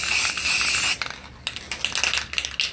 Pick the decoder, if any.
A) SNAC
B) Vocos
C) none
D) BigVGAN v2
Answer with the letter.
C